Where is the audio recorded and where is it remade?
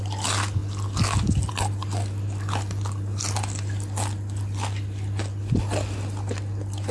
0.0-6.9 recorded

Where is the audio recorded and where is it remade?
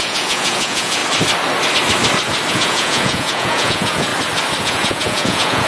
0.0-1.0 remade; 1.0-2.5 recorded; 2.5-4.1 remade; 4.1-4.6 recorded; 4.6-5.7 remade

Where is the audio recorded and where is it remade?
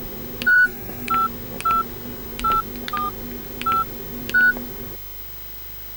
0.0-0.5 recorded; 0.5-1.1 remade; 1.1-6.0 recorded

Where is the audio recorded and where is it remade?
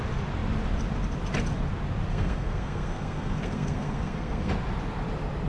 0.0-2.1 recorded; 2.1-4.5 remade; 4.5-5.5 recorded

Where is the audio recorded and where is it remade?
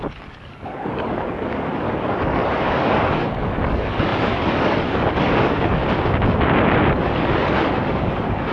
0.0-5.8 remade; 5.8-6.9 recorded; 6.9-8.5 remade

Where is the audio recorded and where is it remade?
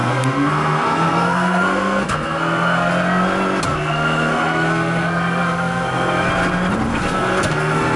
0.0-2.9 remade; 2.9-3.7 recorded; 3.7-6.3 remade; 6.3-6.9 recorded; 6.9-8.0 remade